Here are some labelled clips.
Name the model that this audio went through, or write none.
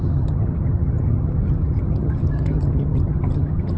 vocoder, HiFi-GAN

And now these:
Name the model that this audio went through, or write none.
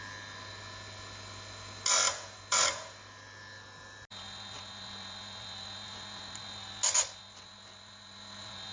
none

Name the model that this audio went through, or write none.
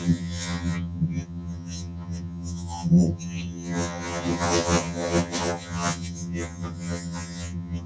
vocoder, HiFi-GAN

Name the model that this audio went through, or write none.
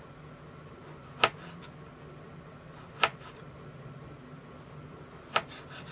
none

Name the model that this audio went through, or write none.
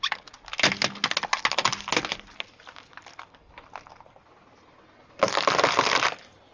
none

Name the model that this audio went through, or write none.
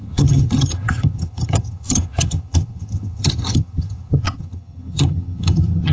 vocoder, HiFi-GAN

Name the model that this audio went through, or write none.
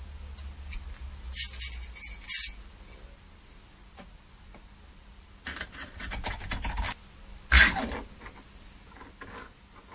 none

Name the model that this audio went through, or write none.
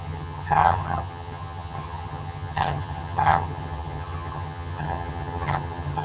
vocoder, HiFi-GAN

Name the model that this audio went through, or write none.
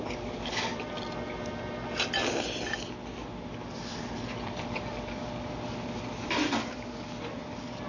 none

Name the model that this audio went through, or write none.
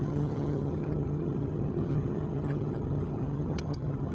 vocoder, HiFi-GAN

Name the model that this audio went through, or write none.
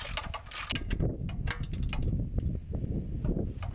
none